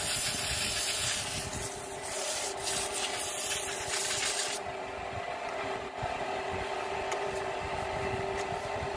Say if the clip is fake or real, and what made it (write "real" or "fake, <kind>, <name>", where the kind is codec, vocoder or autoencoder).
real